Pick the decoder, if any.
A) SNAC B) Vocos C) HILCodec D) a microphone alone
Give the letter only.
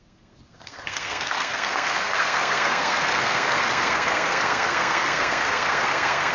A